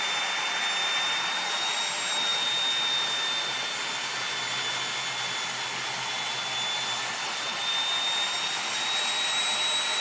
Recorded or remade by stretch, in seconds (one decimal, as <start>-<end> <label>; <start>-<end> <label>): 0.0-10.0 recorded